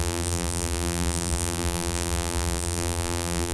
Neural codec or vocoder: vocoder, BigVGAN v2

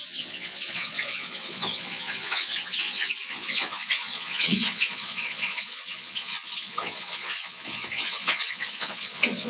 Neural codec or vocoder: vocoder, Vocos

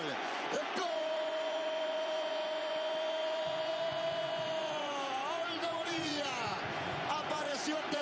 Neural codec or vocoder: vocoder, Vocos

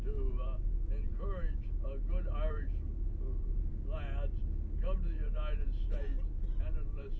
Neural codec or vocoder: none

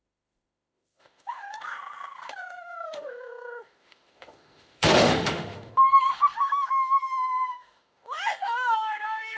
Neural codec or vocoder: autoencoder, DAC-VAE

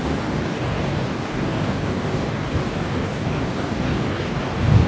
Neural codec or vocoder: codec, DAC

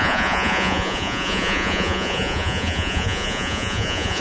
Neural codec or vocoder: vocoder, Vocos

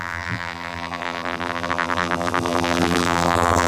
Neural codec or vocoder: vocoder, BigVGAN v2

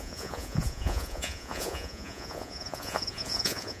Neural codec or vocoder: vocoder, Vocos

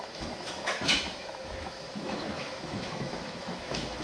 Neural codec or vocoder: autoencoder, DAC-VAE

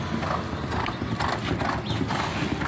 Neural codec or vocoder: none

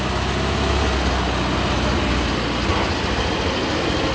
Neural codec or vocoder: none